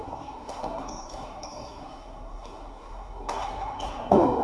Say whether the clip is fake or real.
fake